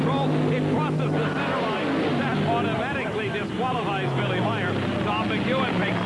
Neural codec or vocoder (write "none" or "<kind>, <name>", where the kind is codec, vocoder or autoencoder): none